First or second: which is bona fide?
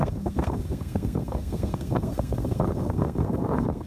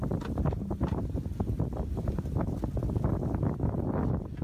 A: second